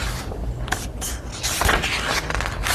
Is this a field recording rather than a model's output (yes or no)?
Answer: yes